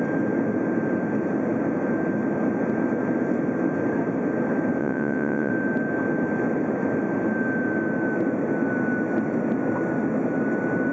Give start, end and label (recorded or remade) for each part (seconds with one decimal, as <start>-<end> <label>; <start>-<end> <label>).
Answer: 0.0-4.8 recorded; 4.8-5.5 remade; 5.5-10.9 recorded